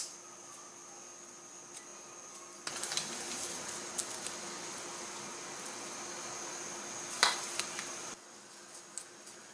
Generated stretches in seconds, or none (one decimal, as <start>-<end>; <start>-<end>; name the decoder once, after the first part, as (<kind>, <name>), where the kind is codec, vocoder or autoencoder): none